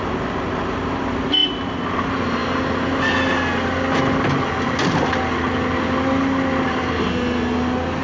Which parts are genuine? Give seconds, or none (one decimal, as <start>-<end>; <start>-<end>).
0.0-8.0